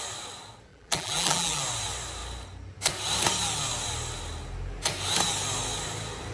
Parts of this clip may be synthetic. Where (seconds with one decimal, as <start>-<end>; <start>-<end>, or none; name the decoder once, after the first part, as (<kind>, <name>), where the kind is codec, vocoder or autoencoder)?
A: 0.7-1.6 (vocoder, BigVGAN v2)